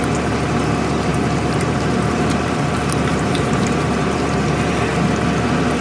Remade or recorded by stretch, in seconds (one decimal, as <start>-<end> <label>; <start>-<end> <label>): 0.0-1.1 recorded; 1.1-4.2 remade; 4.2-5.8 recorded